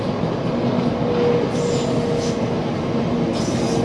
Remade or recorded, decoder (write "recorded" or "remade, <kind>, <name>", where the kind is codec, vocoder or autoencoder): recorded